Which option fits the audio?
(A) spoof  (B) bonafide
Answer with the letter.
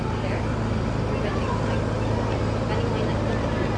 B